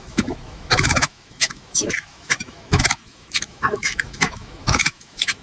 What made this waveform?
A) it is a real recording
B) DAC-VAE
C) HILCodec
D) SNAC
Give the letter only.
B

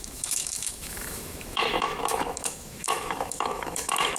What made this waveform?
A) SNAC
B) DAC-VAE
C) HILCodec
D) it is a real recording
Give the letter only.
B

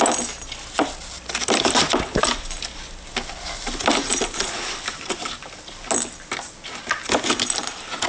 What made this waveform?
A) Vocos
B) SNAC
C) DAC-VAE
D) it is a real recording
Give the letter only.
D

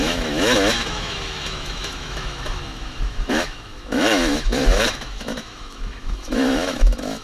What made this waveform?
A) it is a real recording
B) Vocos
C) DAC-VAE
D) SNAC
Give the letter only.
C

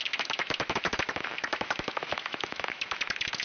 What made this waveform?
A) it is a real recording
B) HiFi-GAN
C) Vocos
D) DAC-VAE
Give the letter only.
D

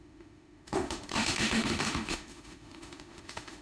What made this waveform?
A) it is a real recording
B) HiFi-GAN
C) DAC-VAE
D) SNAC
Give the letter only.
C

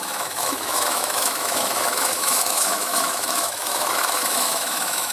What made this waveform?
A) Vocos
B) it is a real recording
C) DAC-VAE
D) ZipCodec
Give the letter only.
C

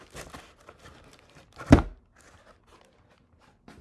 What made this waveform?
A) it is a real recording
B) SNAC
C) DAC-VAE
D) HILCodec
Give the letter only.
A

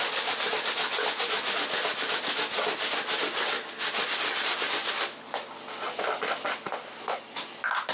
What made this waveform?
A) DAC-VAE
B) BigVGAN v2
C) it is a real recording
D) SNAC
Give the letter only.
C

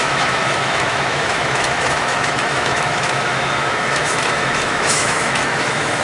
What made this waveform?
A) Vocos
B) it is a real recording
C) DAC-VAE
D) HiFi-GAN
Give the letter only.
C